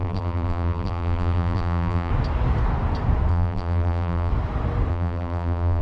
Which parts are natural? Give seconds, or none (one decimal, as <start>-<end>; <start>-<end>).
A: 2.1-3.3; 4.3-4.9